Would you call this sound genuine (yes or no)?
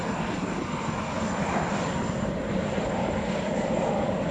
yes